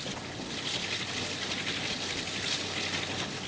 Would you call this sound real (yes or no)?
yes